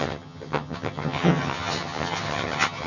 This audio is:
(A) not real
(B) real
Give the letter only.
A